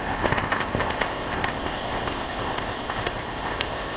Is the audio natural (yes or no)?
no